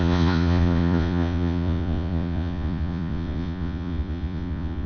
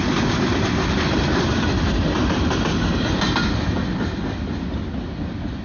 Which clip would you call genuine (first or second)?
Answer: second